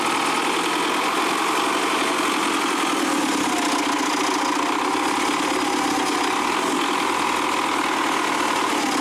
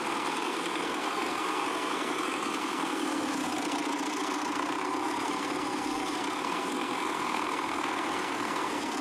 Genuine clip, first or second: first